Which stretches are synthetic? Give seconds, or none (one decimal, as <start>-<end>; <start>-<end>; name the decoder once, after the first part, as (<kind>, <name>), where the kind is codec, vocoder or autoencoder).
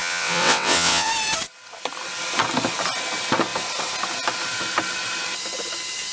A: 0.0-1.1 (vocoder, WaveNeXt)